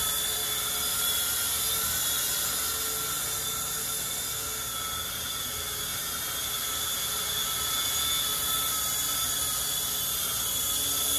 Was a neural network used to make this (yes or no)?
no